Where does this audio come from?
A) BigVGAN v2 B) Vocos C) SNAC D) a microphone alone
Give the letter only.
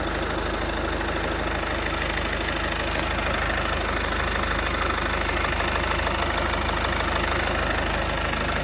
D